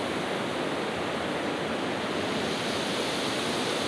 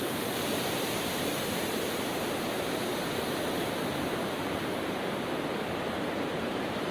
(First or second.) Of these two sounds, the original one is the first